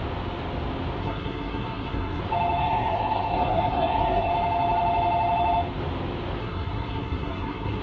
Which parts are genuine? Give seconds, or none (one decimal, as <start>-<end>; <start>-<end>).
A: 0.0-1.0; 2.2-2.6; 4.3-6.4